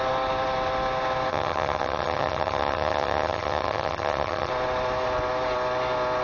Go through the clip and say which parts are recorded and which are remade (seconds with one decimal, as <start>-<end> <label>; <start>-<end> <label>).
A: 0.0-1.3 recorded; 1.3-4.5 remade; 4.5-6.2 recorded